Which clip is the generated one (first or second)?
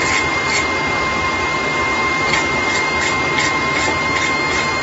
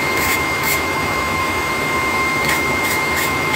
second